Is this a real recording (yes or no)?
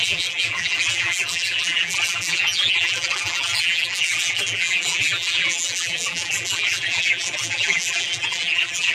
no